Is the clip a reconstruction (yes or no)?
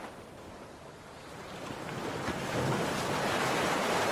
no